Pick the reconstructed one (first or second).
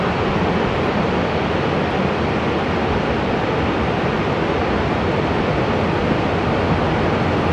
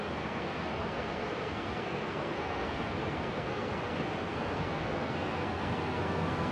second